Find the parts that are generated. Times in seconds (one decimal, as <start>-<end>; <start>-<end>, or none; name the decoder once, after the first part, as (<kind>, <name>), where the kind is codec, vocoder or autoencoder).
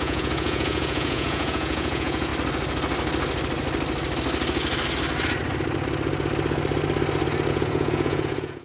0.0-2.3 (vocoder, Vocos); 7.5-8.6